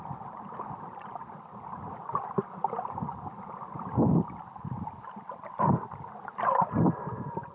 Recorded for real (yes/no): yes